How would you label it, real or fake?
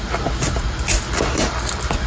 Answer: real